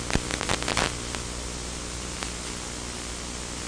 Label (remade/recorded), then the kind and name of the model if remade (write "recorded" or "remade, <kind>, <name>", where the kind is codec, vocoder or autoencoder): recorded